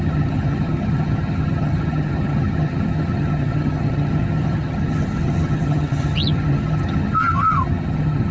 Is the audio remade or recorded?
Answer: remade